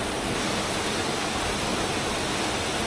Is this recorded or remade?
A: recorded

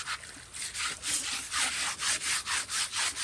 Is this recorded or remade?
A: recorded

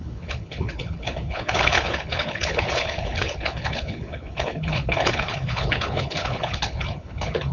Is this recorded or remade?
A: remade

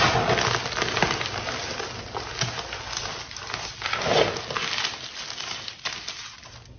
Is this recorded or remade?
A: recorded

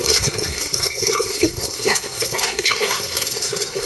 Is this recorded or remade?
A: remade